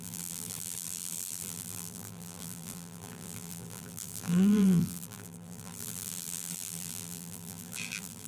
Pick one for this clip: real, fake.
fake